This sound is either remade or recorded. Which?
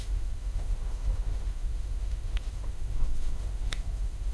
remade